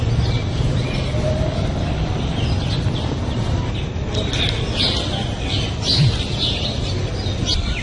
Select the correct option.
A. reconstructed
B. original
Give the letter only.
B